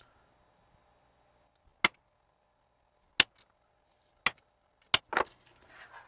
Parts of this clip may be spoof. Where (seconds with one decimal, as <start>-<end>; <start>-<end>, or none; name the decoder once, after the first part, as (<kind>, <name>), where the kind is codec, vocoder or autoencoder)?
none